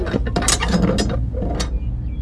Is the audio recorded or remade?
recorded